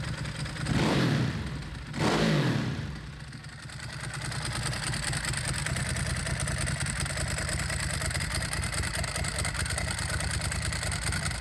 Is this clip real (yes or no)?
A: yes